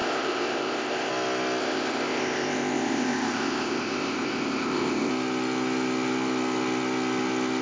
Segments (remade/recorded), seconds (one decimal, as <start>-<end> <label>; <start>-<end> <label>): 0.0-1.1 remade; 1.1-1.6 recorded; 1.6-5.1 remade; 5.1-7.6 recorded

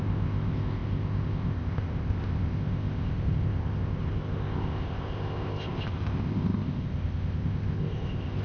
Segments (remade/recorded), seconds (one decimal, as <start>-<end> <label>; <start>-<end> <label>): 0.0-8.4 remade